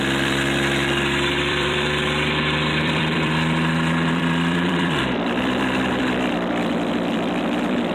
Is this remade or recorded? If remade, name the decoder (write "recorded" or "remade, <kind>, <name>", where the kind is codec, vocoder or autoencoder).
remade, vocoder, BigVGAN v2